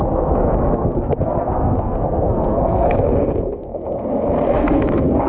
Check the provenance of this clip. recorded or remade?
remade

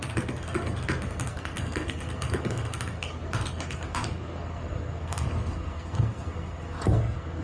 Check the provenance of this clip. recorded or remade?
remade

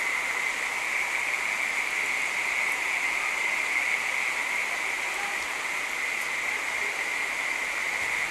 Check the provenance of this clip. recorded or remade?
recorded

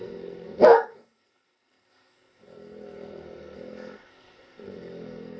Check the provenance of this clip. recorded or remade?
remade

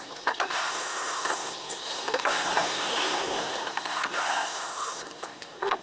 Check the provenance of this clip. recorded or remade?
remade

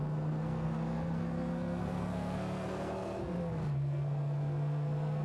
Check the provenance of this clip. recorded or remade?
remade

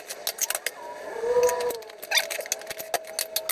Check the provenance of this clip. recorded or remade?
recorded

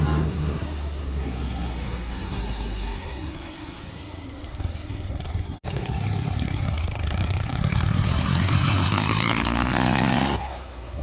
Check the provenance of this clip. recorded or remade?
remade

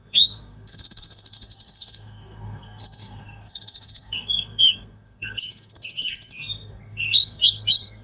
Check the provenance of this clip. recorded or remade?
remade